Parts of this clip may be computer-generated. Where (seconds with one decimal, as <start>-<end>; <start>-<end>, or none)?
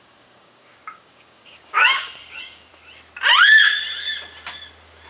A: 0.0-2.7